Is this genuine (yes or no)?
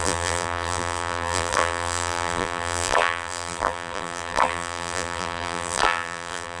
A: no